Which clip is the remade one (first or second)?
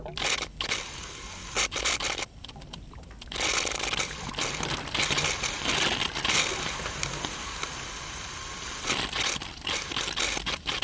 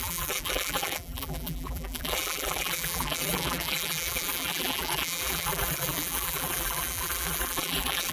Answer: second